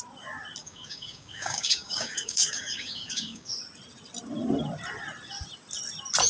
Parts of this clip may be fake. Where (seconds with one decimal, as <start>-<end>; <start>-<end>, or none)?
0.6-3.5